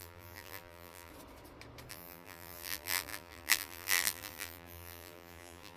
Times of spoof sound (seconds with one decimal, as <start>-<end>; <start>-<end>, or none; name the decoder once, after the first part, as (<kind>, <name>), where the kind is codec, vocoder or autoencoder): 0.0-1.1 (vocoder, BigVGAN v2); 1.9-5.8